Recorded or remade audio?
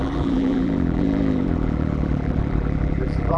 remade